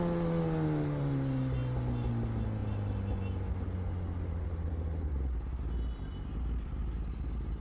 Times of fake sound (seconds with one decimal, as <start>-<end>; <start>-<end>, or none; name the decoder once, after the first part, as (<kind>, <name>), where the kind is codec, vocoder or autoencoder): none